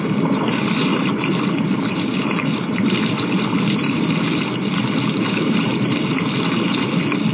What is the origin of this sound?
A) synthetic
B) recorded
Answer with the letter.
B